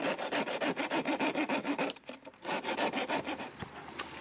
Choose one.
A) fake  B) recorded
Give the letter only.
A